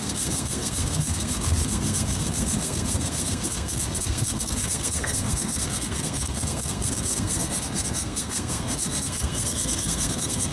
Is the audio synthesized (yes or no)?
yes